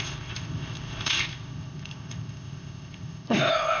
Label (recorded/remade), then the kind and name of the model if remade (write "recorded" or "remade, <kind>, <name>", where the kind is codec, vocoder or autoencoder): remade, codec, ZipCodec